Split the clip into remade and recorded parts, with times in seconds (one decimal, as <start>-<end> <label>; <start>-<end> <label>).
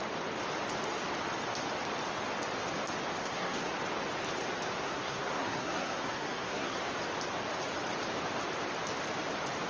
0.0-3.2 recorded; 3.2-3.7 remade; 3.7-4.8 recorded; 4.8-6.8 remade; 6.8-9.7 recorded